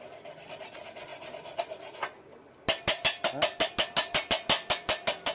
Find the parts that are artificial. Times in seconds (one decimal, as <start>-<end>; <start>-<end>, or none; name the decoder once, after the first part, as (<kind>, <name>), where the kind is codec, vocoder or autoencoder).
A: none